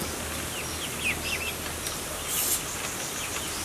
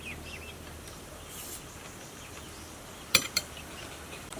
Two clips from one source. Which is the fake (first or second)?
second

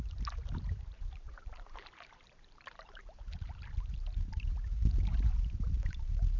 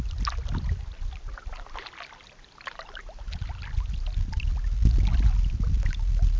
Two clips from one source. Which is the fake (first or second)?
first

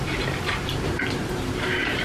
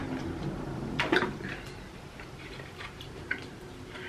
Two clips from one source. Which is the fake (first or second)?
second